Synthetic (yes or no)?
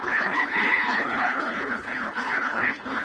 yes